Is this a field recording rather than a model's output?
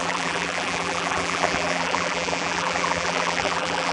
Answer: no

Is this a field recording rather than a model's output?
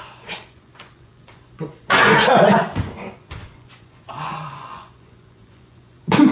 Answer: no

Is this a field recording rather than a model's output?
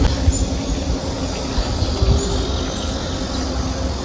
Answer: yes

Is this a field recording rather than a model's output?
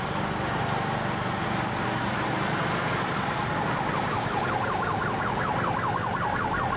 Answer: yes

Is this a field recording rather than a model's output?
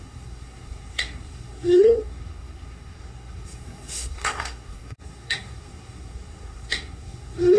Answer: no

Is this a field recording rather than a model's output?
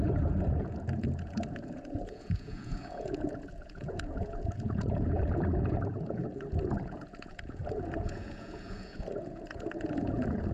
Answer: no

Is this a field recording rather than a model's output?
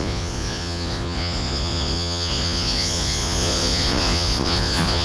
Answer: no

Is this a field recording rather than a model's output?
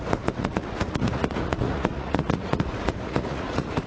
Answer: no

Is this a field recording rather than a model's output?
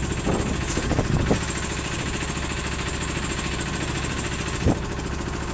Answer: yes